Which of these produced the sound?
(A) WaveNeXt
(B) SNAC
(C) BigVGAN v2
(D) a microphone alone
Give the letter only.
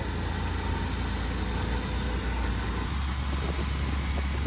D